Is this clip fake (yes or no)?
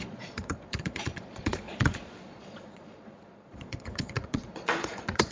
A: yes